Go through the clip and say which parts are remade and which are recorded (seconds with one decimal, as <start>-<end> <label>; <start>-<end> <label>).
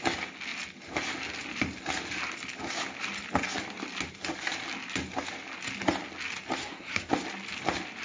0.0-6.6 recorded; 6.6-7.1 remade; 7.1-8.0 recorded